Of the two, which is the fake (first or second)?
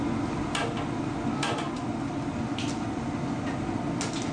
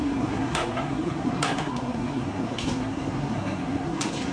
second